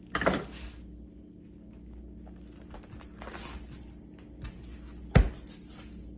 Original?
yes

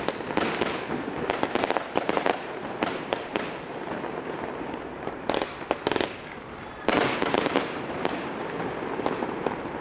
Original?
yes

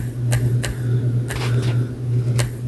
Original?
yes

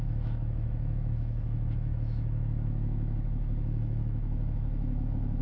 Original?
no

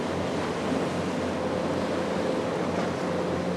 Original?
yes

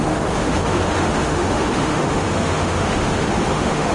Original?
no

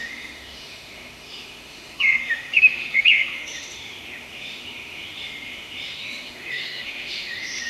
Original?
no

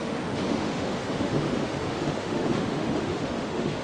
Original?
no